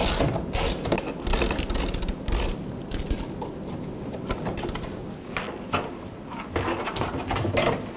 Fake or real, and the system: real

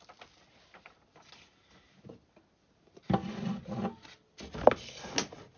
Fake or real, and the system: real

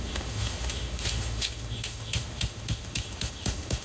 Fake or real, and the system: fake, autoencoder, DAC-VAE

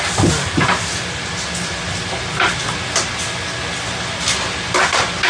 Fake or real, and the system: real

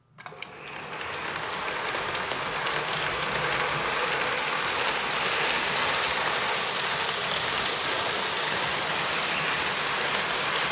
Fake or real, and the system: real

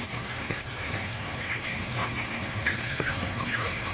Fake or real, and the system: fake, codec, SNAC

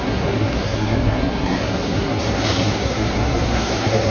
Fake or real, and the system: fake, codec, SNAC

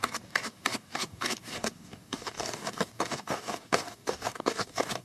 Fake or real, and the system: fake, codec, DAC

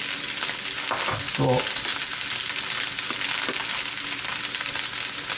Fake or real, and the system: real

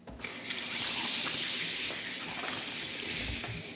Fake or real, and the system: real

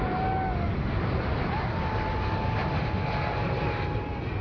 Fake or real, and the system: real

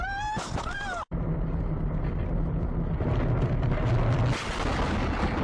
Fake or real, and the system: real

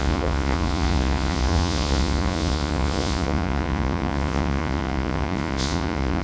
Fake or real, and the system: fake, vocoder, Vocos